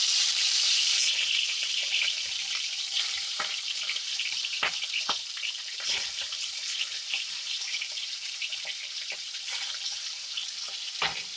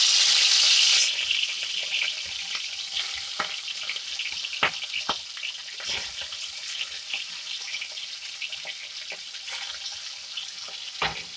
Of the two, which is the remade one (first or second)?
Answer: first